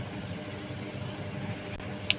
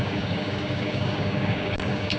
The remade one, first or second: second